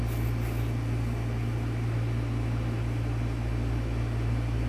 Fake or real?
real